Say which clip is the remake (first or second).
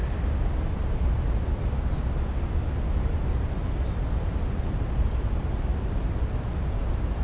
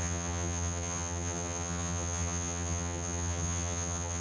second